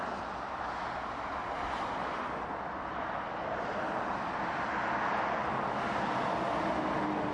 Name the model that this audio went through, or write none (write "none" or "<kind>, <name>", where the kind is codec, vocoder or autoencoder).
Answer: none